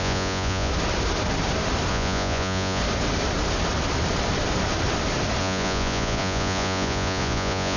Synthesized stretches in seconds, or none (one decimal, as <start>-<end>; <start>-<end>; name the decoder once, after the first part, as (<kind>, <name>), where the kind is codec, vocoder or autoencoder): 0.0-0.7 (vocoder, Vocos); 1.9-2.8; 5.4-7.8